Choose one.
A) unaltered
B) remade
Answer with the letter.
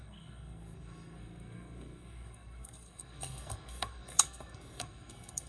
B